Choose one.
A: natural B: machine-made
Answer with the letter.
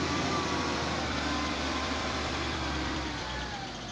B